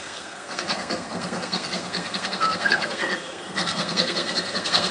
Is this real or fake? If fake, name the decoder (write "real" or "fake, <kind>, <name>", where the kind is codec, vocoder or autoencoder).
fake, codec, SNAC